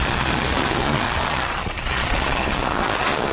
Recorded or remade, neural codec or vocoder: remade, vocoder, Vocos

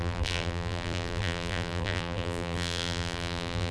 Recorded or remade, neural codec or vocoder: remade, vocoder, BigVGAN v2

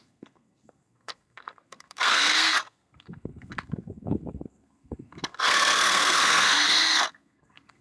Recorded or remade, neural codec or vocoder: remade, codec, SNAC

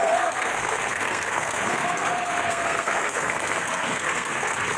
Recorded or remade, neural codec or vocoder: remade, codec, SNAC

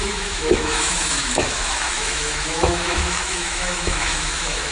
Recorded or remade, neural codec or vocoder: remade, autoencoder, DAC-VAE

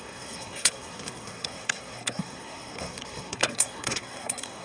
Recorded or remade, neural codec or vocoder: remade, codec, SNAC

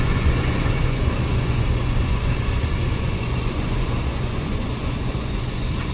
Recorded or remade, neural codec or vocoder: remade, vocoder, Vocos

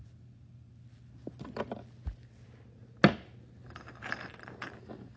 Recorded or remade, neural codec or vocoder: recorded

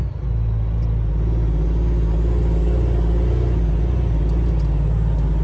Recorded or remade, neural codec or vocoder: recorded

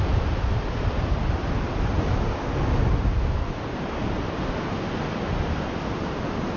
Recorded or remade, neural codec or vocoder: recorded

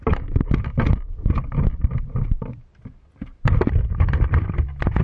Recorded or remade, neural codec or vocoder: recorded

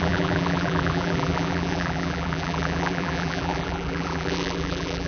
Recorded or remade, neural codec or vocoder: remade, vocoder, BigVGAN v2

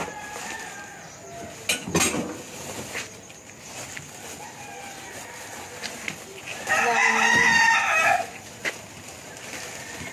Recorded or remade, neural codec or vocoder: recorded